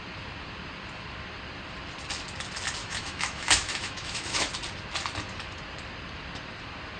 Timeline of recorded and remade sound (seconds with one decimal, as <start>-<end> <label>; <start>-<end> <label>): 0.0-2.8 recorded; 2.8-4.5 remade; 4.5-7.0 recorded